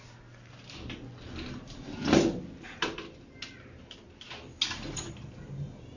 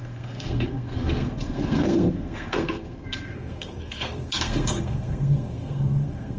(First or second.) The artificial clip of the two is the second